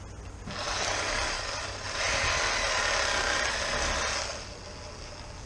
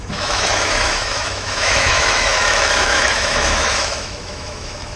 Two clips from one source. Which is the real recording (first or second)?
first